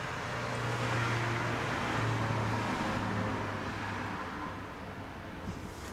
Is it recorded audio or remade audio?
recorded